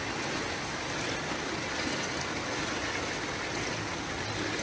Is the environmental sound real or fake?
real